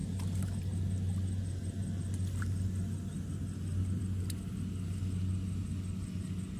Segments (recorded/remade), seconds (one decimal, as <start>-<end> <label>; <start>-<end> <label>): 0.0-6.6 recorded